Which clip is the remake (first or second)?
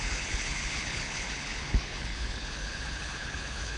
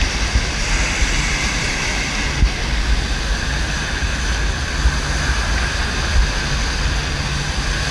first